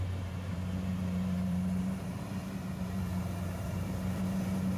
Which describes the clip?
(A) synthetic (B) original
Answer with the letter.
A